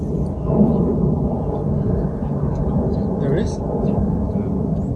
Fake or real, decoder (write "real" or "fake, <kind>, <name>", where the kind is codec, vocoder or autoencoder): real